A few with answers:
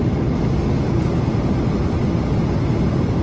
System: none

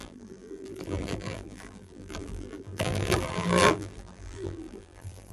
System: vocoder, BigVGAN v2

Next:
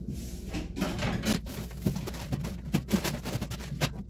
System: vocoder, BigVGAN v2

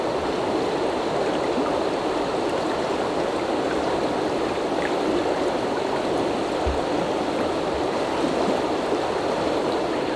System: none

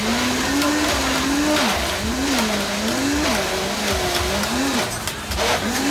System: none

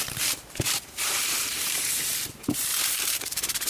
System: vocoder, BigVGAN v2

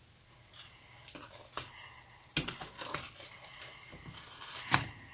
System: none